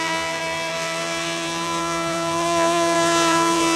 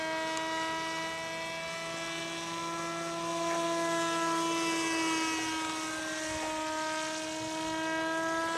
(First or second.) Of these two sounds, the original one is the second